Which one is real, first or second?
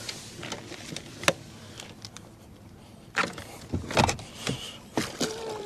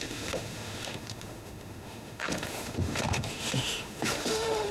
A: first